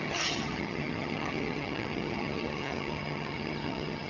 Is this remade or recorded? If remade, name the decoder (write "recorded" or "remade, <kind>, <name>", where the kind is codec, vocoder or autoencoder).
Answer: remade, vocoder, HiFi-GAN